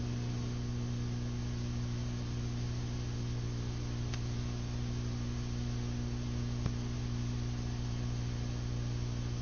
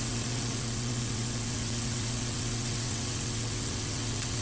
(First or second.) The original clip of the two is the first